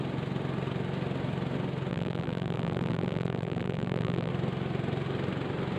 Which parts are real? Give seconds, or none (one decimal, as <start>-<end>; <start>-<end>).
0.0-1.9; 4.3-5.8